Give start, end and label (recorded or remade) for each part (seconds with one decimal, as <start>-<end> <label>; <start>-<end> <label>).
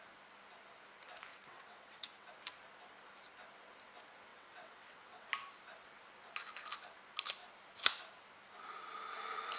0.0-1.3 recorded; 1.3-2.3 remade; 2.3-4.3 recorded; 4.3-5.3 remade; 5.3-9.6 recorded